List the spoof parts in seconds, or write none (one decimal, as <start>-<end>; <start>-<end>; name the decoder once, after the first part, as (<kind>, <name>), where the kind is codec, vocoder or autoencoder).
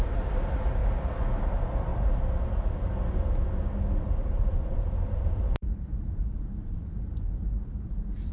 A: 0.0-0.8 (vocoder, BigVGAN v2); 1.4-1.9; 4.1-8.3